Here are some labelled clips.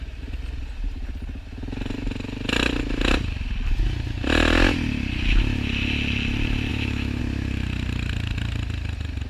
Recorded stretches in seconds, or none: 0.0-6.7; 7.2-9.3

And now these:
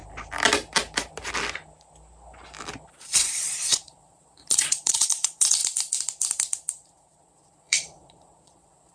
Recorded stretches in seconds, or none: 0.0-2.9; 5.6-6.7

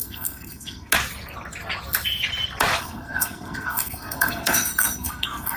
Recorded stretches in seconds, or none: 0.9-2.8

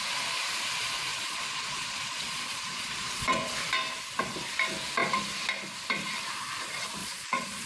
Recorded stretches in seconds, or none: 0.0-1.1; 3.5-7.0

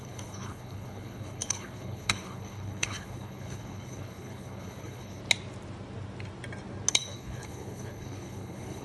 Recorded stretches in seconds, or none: 5.2-6.9

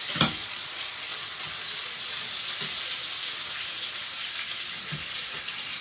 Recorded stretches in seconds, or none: 0.0-0.4; 2.3-5.8